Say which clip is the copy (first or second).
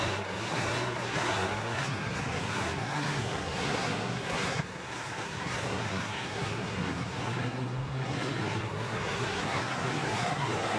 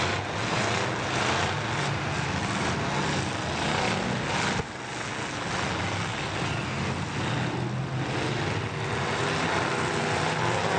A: first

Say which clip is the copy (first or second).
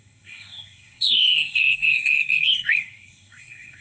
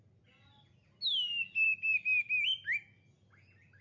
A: first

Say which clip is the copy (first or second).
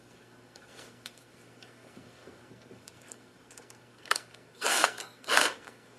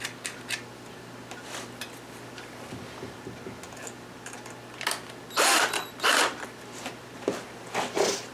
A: first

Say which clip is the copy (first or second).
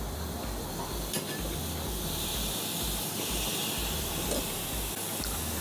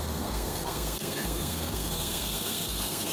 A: second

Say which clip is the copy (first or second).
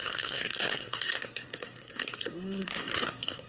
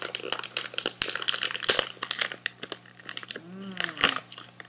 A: first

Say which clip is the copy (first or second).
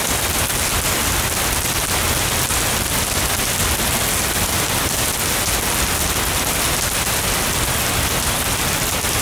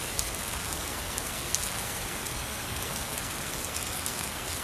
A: second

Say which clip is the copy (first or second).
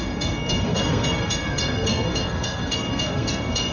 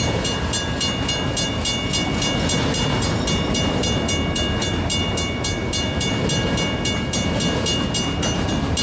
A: first